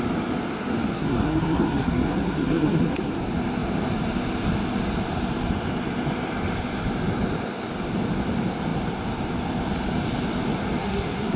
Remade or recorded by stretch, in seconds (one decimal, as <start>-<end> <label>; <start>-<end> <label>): 0.0-0.9 recorded; 0.9-3.1 remade; 3.1-10.8 recorded; 10.8-11.4 remade